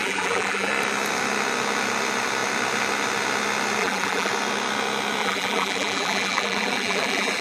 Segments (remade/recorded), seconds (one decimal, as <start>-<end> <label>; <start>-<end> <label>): 0.0-0.7 remade; 0.7-3.8 recorded; 3.8-4.3 remade; 4.3-5.2 recorded; 5.2-7.4 remade